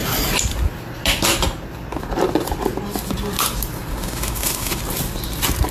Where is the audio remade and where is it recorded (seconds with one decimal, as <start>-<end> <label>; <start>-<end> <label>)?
0.0-3.9 recorded; 3.9-4.8 remade; 4.8-5.7 recorded